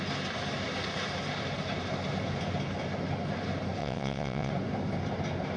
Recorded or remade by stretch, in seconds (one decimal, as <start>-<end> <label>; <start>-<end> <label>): 0.0-3.8 recorded; 3.8-4.5 remade; 4.5-5.6 recorded